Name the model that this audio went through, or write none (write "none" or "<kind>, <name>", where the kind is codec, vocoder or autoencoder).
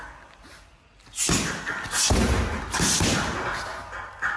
none